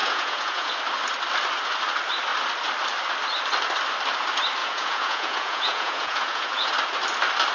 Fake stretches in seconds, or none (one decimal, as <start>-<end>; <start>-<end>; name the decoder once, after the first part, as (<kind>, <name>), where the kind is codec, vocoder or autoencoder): 0.0-0.7 (vocoder, Vocos); 4.6-6.7